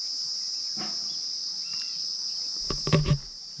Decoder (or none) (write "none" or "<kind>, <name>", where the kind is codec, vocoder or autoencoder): none